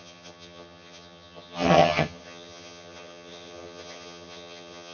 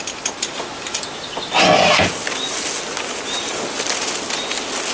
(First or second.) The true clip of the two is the second